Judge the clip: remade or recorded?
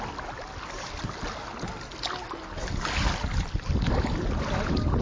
recorded